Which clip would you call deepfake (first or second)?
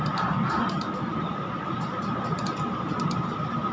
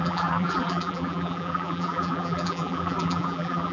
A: second